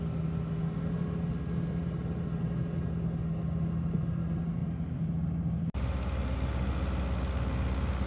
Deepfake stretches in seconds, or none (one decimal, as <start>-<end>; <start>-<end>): none